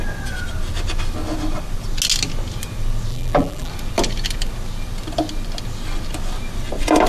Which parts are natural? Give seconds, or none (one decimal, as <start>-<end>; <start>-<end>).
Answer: 0.0-3.1; 3.7-7.1